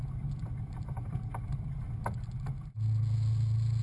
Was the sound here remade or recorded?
recorded